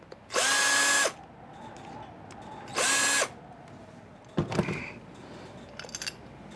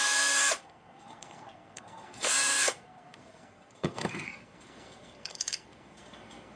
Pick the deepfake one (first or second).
second